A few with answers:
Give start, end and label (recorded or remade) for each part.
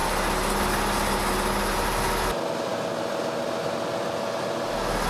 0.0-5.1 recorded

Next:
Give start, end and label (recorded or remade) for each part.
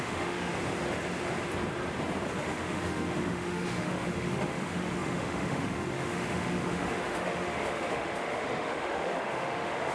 0.0-0.5 remade; 0.5-2.4 recorded; 2.4-9.9 remade